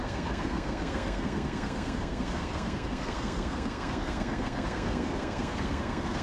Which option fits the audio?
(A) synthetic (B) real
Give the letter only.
A